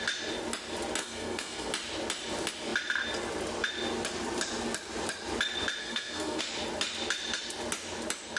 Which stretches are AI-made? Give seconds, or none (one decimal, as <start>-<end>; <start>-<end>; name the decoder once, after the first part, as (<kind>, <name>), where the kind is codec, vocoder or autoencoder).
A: 1.0-1.7 (codec, SNAC); 5.8-6.4